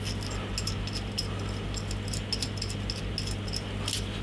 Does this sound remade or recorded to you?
recorded